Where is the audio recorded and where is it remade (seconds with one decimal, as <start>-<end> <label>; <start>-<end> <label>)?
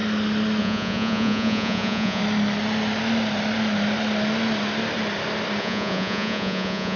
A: 0.0-0.6 recorded; 0.6-2.2 remade; 2.2-5.6 recorded; 5.6-7.0 remade